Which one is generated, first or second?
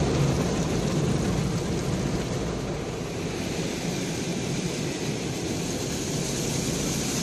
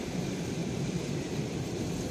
second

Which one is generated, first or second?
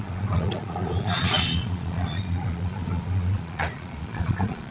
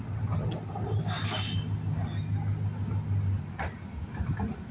first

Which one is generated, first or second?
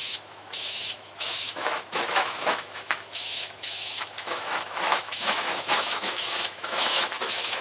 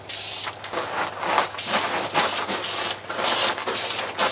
first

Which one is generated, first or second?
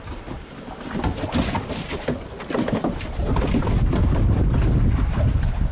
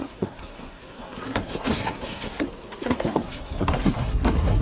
second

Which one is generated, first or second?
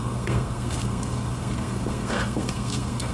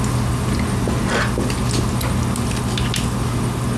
first